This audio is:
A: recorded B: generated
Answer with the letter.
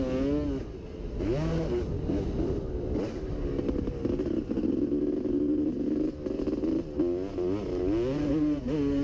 A